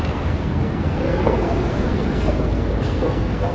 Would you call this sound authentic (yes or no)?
no